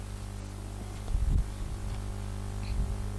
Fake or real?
real